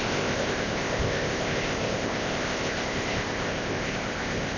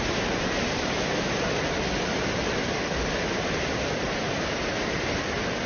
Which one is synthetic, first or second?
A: first